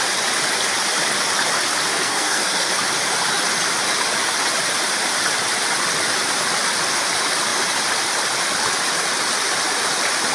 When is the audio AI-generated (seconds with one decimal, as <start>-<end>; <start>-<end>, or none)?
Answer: 1.9-2.7

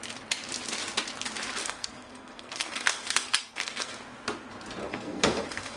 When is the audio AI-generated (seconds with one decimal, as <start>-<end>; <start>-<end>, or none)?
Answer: 1.6-4.0; 4.8-5.8

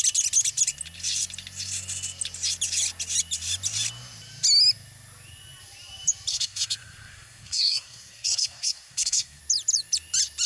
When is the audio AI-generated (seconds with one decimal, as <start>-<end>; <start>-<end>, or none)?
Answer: 6.3-9.4

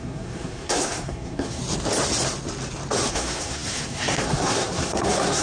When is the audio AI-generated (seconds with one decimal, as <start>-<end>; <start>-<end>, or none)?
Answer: 0.0-1.6; 3.1-5.4

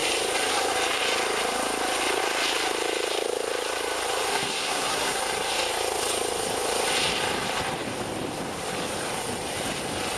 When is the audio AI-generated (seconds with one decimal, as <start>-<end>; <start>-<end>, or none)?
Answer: 4.3-5.2

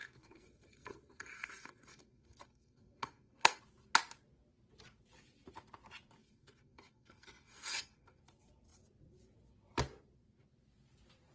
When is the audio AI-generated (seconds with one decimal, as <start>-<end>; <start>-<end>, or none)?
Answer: 0.0-3.6; 6.2-8.2

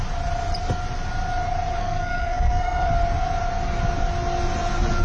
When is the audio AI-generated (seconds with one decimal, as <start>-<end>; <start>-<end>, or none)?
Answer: 1.8-2.9